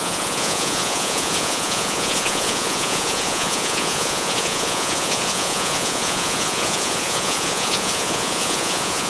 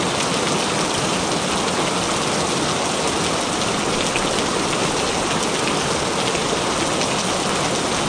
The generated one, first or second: first